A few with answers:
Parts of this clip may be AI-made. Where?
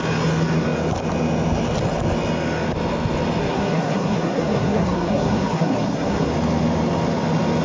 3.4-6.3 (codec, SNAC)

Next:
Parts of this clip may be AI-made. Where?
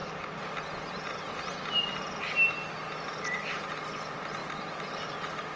none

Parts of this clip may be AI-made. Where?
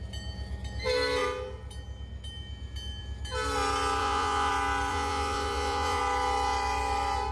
4.0-4.5 (vocoder, Vocos); 4.9-6.0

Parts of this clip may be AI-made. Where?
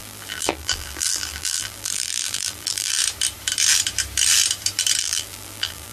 0.0-3.0 (vocoder, BigVGAN v2); 5.0-5.9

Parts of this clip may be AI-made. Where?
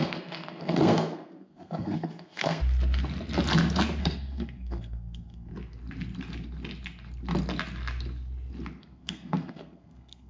0.0-2.6 (codec, SNAC); 4.0-5.5; 8.8-10.3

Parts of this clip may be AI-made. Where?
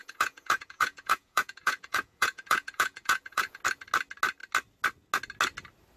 0.0-3.6 (vocoder, Vocos)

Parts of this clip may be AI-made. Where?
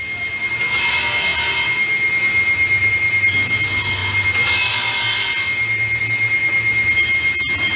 none